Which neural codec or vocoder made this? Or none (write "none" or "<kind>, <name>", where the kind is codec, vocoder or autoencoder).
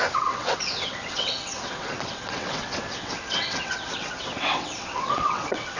vocoder, WaveNeXt